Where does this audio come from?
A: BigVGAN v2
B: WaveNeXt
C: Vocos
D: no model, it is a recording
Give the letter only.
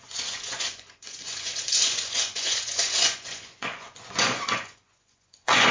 C